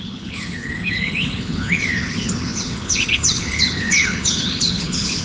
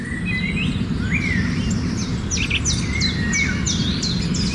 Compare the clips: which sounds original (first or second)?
second